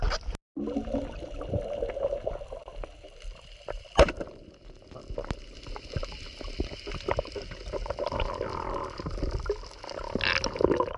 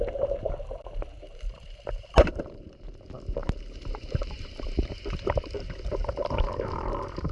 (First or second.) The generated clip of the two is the second